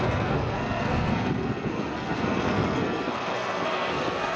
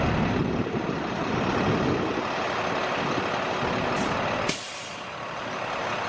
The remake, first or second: first